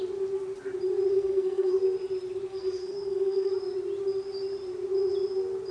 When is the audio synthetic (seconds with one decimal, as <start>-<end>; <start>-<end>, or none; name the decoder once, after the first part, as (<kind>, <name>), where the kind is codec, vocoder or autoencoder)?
1.1-1.7 (codec, SNAC); 2.5-3.5